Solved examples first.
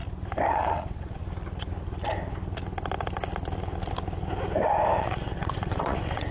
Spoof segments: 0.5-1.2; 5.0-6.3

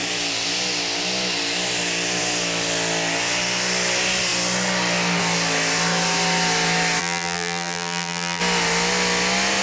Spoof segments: 7.0-8.4